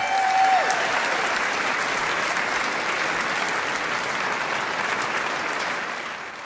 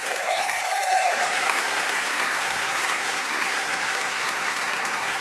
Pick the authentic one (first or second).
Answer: first